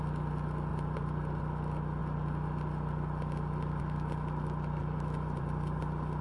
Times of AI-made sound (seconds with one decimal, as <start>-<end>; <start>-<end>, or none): 0.7-1.4; 4.8-5.8